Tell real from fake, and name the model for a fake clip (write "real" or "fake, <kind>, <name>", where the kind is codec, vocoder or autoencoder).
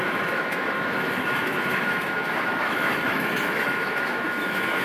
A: fake, autoencoder, DAC-VAE